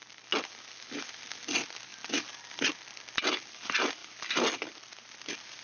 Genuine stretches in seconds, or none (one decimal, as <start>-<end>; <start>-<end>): 0.0-5.6

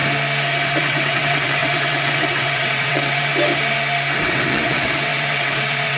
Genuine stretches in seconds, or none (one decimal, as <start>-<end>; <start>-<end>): 0.0-0.8; 3.3-4.2

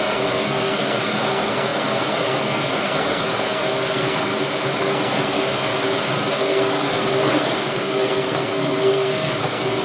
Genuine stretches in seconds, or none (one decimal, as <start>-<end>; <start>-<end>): 4.3-4.8; 5.7-6.3

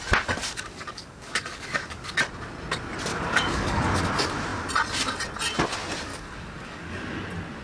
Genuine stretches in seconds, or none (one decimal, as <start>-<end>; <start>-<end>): 0.0-0.4; 2.2-3.1; 4.1-6.1; 6.9-7.6

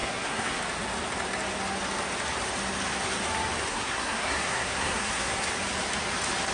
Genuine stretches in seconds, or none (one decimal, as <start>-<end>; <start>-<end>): 0.6-3.7; 5.5-6.5

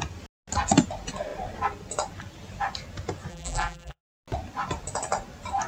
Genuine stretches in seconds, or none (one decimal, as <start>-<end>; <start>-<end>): 0.0-3.3; 4.0-5.7